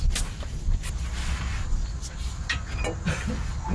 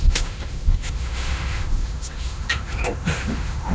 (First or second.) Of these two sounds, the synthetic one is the second